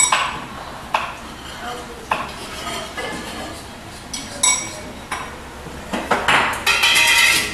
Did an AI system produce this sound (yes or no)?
no